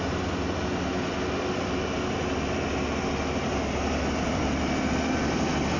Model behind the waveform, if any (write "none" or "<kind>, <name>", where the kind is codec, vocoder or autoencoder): none